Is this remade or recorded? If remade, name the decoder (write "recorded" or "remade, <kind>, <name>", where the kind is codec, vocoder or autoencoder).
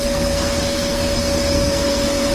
remade, codec, SNAC